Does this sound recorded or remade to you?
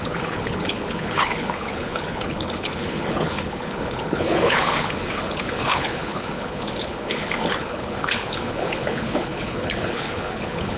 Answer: remade